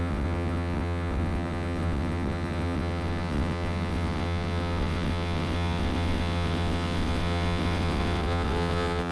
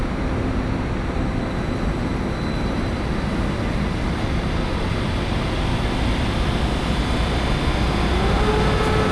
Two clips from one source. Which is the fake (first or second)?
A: first